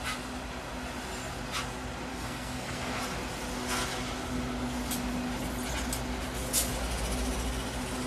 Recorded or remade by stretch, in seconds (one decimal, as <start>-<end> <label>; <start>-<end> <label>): 0.0-2.1 recorded; 2.1-3.0 remade; 3.0-8.1 recorded